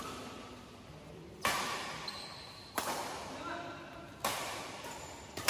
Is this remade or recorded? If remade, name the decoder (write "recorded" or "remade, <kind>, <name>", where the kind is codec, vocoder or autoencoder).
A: recorded